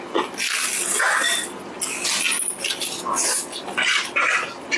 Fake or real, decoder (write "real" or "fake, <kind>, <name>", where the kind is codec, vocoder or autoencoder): real